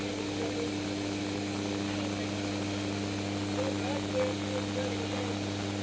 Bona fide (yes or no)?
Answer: yes